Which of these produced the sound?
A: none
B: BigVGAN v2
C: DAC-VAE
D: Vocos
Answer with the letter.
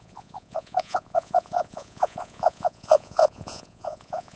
D